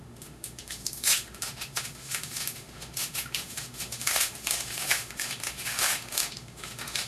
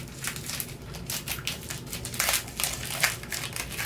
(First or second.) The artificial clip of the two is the first